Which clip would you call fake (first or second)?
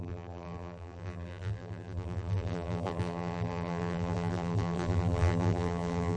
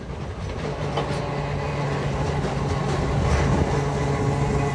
first